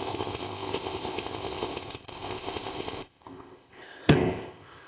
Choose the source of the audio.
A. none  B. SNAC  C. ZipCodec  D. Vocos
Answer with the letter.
C